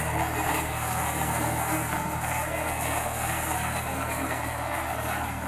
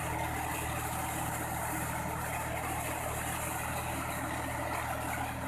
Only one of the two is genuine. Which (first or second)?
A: second